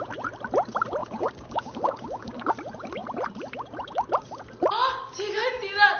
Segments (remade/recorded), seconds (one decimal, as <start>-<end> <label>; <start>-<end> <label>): 0.0-1.0 recorded; 1.0-2.5 remade; 2.5-6.0 recorded